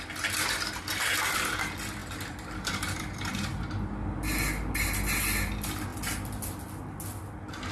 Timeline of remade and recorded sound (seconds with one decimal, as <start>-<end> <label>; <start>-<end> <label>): 0.0-7.7 recorded

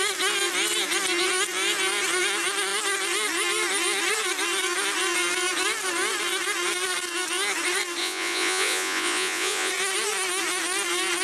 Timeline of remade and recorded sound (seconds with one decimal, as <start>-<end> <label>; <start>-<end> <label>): 0.0-8.0 recorded; 8.0-9.7 remade; 9.7-11.2 recorded

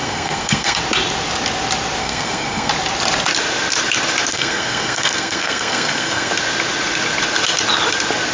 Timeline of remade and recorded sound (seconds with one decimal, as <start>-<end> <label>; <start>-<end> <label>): 0.0-0.8 remade; 0.8-2.0 recorded; 2.0-2.7 remade; 2.7-4.3 recorded; 4.3-6.3 remade; 6.3-8.3 recorded

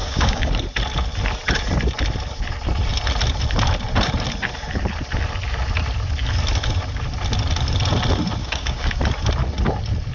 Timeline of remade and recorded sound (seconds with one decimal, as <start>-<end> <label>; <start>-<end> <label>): 0.0-0.5 remade; 0.5-8.4 recorded; 8.4-9.0 remade; 9.0-10.1 recorded

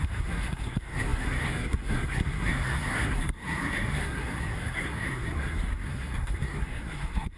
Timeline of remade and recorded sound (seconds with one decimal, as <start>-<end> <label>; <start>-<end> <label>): 0.0-7.4 remade

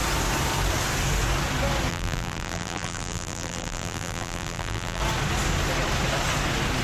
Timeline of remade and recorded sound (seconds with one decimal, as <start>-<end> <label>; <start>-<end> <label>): 0.0-1.9 recorded; 1.9-5.0 remade; 5.0-6.8 recorded